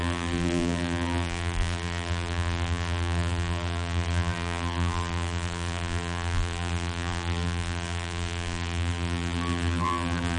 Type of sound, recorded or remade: remade